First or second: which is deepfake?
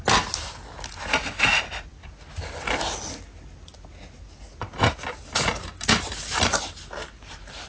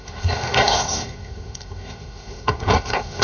second